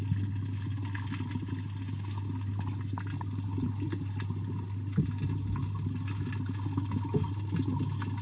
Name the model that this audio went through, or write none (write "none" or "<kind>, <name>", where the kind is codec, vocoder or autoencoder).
none